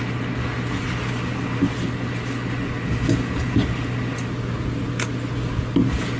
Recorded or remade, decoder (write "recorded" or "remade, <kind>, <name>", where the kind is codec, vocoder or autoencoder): recorded